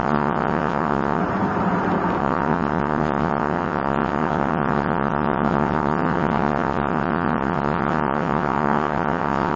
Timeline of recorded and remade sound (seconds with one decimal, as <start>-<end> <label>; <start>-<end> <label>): 0.0-1.2 remade; 1.2-2.2 recorded; 2.2-9.6 remade